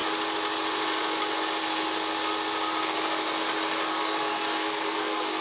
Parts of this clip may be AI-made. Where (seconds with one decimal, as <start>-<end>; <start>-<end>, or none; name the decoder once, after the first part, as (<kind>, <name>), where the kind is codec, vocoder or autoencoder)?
3.9-5.4 (codec, SNAC)